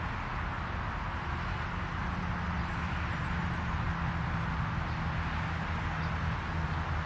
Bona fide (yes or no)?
yes